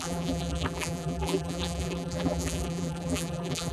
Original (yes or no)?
no